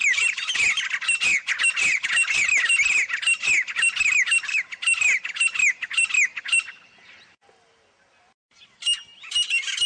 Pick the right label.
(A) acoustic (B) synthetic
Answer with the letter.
A